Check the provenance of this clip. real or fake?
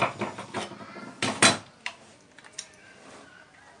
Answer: real